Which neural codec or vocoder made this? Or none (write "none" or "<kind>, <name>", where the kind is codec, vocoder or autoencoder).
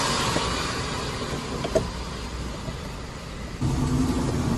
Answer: none